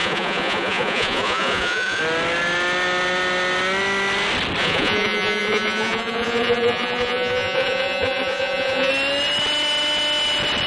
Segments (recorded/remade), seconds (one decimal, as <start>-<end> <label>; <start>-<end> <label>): 0.0-2.0 remade; 2.0-4.6 recorded; 4.6-8.9 remade; 8.9-10.7 recorded